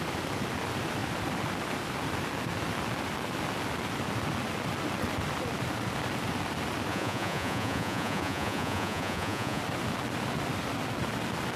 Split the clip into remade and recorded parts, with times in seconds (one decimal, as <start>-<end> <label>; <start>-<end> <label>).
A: 0.0-6.9 recorded; 6.9-9.6 remade; 9.6-11.6 recorded